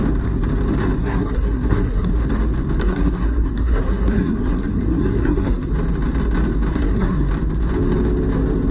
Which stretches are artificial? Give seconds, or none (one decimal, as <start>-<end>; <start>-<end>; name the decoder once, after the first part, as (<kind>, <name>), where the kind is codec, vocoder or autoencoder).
1.0-2.1 (codec, SNAC); 2.8-5.7; 6.7-7.3